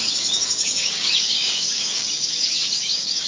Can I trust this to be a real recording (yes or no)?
no